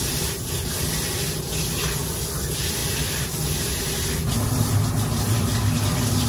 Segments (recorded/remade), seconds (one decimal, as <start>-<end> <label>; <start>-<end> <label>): 0.0-6.3 recorded